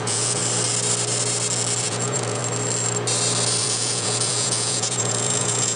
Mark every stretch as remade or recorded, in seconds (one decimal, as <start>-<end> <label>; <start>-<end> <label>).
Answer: 0.0-0.4 remade; 0.4-1.8 recorded; 1.8-2.4 remade; 2.4-3.6 recorded; 3.6-5.8 remade